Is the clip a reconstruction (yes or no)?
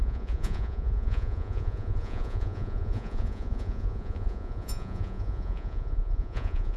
yes